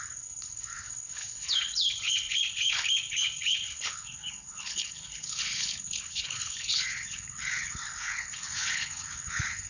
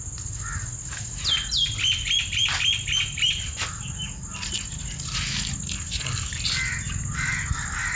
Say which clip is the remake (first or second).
first